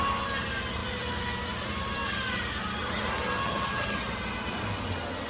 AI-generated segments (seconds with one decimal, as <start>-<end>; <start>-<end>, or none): 3.4-4.1